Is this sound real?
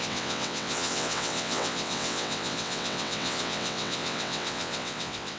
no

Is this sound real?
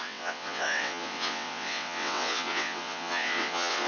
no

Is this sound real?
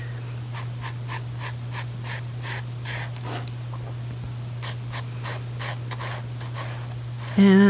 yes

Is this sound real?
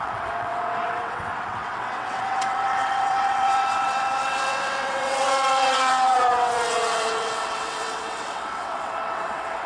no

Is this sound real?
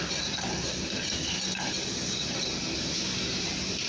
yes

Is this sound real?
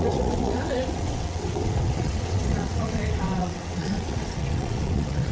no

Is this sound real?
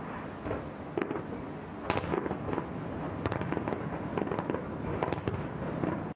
yes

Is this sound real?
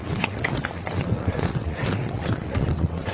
no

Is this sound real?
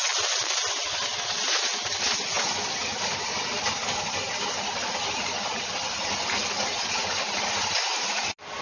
yes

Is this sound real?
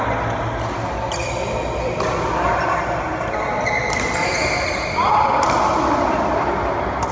yes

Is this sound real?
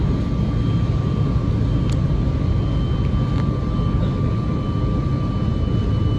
yes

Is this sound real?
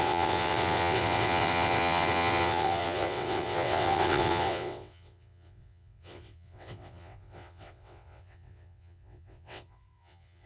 no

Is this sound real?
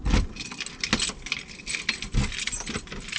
yes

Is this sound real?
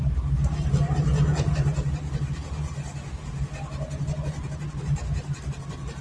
yes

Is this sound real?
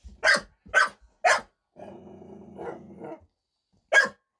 yes